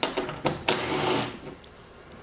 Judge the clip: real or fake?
real